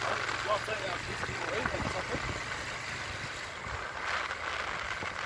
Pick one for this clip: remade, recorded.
recorded